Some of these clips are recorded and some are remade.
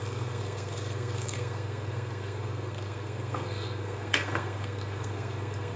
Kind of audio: remade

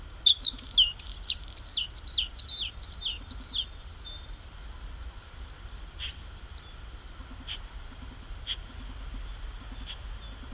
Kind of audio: recorded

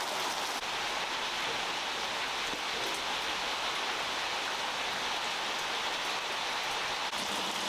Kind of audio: recorded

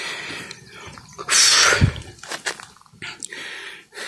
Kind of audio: recorded